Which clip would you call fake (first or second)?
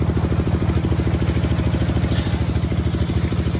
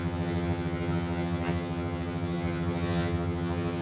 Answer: second